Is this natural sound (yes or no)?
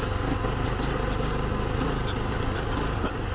yes